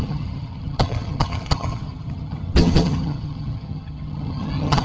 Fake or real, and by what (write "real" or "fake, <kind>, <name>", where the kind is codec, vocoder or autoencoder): fake, vocoder, HiFi-GAN